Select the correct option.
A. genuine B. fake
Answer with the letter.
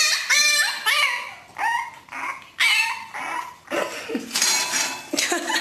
A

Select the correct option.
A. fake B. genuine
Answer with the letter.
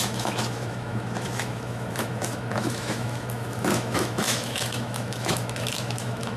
A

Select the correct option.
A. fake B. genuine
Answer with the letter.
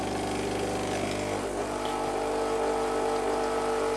B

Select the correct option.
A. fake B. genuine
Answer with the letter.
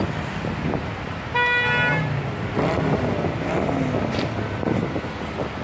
B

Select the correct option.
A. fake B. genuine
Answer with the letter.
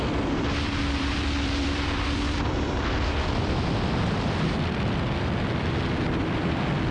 A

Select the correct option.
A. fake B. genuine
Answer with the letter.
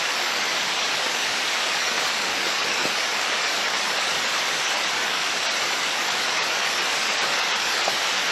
A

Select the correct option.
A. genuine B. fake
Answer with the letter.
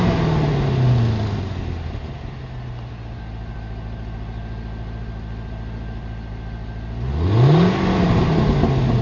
A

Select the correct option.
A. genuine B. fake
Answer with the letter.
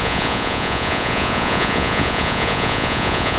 B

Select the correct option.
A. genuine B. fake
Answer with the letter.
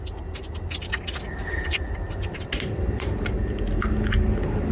A